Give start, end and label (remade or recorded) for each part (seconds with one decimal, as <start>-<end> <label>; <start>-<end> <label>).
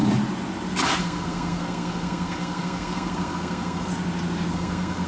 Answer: 0.0-1.0 recorded; 1.0-3.9 remade; 3.9-4.5 recorded; 4.5-5.1 remade